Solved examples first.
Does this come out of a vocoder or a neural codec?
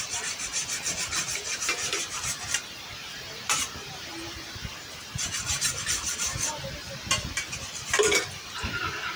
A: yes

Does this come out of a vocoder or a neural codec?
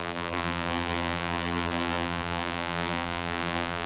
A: yes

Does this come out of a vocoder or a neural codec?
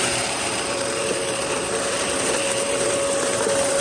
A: yes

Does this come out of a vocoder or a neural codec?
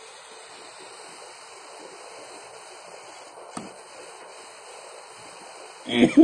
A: yes